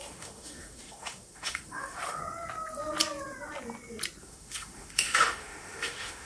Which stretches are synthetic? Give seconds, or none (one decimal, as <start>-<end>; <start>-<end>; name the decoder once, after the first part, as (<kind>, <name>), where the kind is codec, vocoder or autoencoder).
0.0-2.2 (autoencoder, DAC-VAE); 4.2-6.3